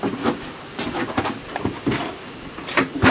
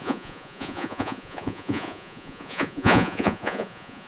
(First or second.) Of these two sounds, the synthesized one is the second